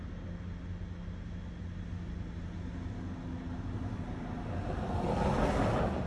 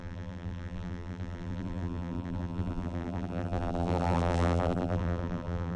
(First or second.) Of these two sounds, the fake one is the second